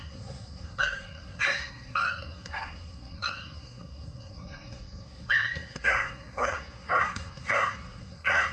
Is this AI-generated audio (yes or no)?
yes